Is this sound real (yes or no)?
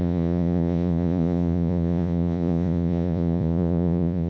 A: no